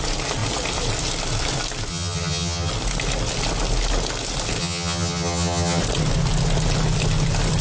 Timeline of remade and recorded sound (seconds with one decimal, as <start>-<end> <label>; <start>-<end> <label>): 0.0-1.9 recorded; 1.9-2.7 remade; 2.7-4.6 recorded; 4.6-5.8 remade; 5.8-7.6 recorded

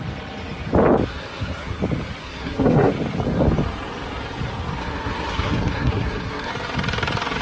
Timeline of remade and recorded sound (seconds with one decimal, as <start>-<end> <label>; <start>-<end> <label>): 0.0-1.1 recorded; 1.1-1.8 remade; 1.8-2.2 recorded; 2.2-2.9 remade; 2.9-4.8 recorded; 4.8-6.5 remade; 6.5-7.4 recorded

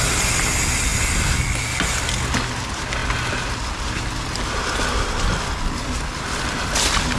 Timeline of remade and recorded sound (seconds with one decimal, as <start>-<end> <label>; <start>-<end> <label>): 0.0-7.2 recorded

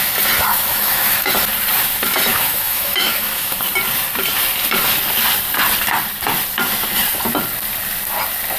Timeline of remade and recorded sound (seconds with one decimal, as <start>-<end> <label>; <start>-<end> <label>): 0.0-0.5 recorded; 0.5-1.3 remade; 1.3-2.3 recorded; 2.3-3.6 remade; 3.6-8.6 recorded